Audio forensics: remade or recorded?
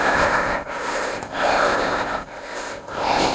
remade